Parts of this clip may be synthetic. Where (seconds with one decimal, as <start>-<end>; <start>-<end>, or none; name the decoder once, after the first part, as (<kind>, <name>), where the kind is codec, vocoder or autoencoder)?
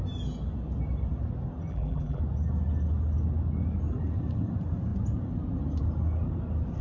1.7-2.2 (vocoder, BigVGAN v2)